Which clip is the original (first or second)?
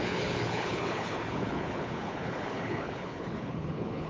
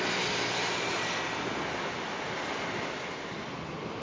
second